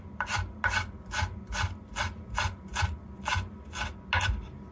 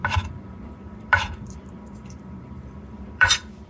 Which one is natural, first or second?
first